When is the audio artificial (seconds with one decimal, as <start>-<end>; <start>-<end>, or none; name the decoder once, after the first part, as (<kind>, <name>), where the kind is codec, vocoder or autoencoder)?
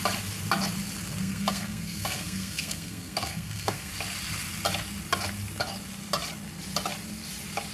1.2-3.9 (codec, SNAC)